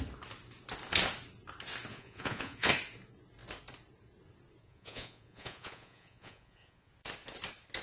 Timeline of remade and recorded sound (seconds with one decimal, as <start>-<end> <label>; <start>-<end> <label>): 0.0-1.9 recorded; 1.9-2.7 remade; 2.7-4.6 recorded; 4.6-6.9 remade; 6.9-7.8 recorded